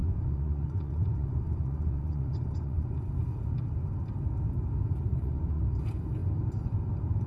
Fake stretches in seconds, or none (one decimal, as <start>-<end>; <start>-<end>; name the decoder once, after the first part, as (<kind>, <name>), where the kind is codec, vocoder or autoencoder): 0.0-3.0 (vocoder, Vocos); 5.1-5.6

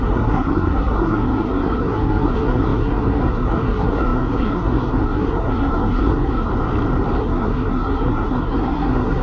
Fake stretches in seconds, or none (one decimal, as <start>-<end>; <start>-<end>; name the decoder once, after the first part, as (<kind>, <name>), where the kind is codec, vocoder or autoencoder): 0.0-6.5 (codec, SNAC); 7.2-9.2

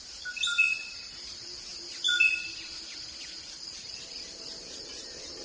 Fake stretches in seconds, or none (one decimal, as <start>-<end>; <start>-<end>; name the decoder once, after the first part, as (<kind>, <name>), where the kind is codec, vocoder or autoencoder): none

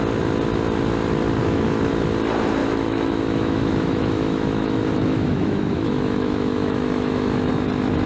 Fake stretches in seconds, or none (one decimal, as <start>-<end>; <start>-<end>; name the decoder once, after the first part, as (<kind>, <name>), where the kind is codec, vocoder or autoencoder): 1.4-1.9 (autoencoder, DAC-VAE); 2.6-7.5